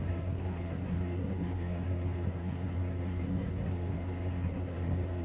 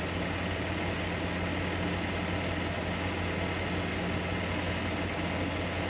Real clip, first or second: second